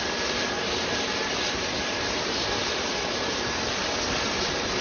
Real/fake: real